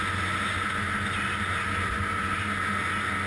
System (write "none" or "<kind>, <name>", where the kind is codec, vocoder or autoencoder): none